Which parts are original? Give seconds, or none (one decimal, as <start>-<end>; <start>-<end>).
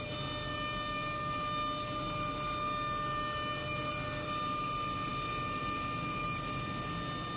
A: 0.0-7.4